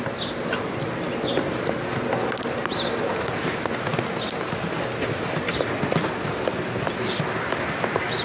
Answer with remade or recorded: recorded